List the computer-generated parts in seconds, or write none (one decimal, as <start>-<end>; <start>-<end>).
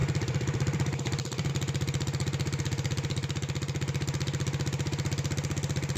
0.0-1.5